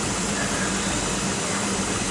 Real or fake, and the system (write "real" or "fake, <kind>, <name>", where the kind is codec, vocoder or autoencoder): fake, vocoder, BigVGAN v2